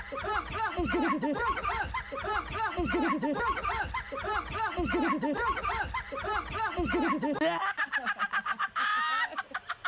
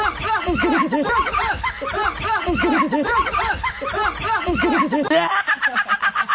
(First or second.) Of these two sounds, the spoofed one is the second